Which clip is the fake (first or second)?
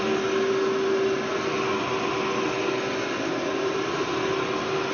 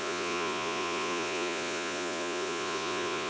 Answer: second